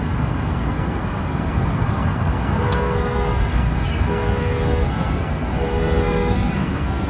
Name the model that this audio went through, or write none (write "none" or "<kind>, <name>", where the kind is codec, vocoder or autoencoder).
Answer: codec, SNAC